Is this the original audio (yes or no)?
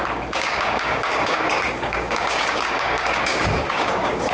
no